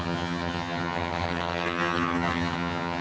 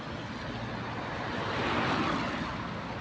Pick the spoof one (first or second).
first